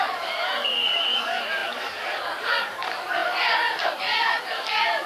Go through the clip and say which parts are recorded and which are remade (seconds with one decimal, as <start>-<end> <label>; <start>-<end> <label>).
0.0-5.1 remade